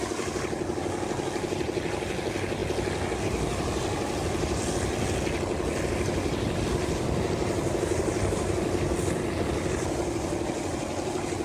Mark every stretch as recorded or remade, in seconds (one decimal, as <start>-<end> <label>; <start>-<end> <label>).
0.0-2.6 remade; 2.6-3.2 recorded; 3.2-4.6 remade; 4.6-5.9 recorded; 5.9-11.4 remade